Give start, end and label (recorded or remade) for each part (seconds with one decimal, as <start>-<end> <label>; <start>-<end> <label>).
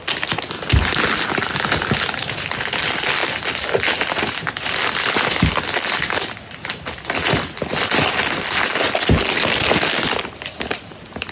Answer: 0.0-11.3 recorded